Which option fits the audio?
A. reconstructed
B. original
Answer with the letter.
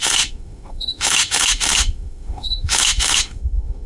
A